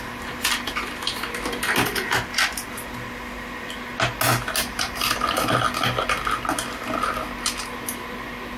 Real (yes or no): yes